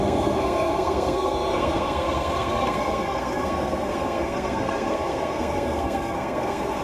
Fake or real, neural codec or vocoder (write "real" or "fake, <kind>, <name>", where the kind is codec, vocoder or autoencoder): fake, codec, SNAC